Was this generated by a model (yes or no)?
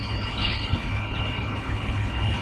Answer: yes